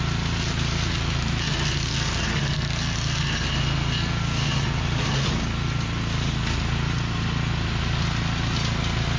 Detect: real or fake real